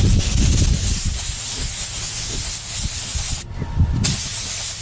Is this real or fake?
real